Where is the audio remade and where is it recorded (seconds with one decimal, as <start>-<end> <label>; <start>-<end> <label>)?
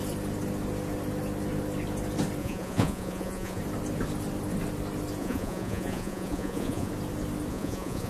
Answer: 0.0-2.4 recorded; 2.4-3.6 remade; 3.6-5.2 recorded; 5.2-6.9 remade; 6.9-7.5 recorded; 7.5-8.1 remade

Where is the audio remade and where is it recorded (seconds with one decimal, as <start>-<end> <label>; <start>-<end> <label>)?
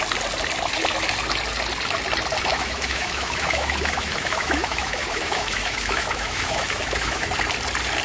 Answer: 0.0-2.5 recorded; 2.5-7.3 remade; 7.3-8.0 recorded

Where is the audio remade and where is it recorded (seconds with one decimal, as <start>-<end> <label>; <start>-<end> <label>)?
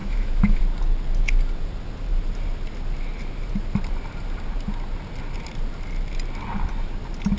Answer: 0.0-0.6 remade; 0.6-7.4 recorded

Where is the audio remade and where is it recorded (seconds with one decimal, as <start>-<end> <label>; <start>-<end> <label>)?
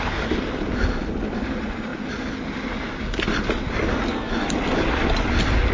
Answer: 0.0-5.7 recorded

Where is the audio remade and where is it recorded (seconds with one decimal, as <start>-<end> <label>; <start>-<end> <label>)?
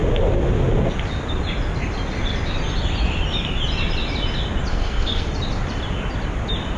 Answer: 0.0-4.7 recorded; 4.7-5.3 remade; 5.3-6.8 recorded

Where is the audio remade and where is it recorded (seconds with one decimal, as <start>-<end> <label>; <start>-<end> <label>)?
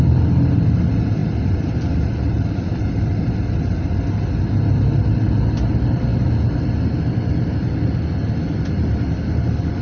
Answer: 0.0-1.2 recorded; 1.2-3.4 remade; 3.4-9.8 recorded